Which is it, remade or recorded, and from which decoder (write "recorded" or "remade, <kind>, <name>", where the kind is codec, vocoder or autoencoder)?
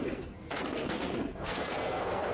remade, codec, SNAC